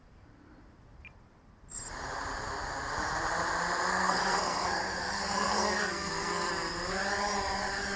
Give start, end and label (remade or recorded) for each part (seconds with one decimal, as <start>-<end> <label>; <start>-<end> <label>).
0.0-3.9 recorded; 3.9-6.5 remade; 6.5-8.0 recorded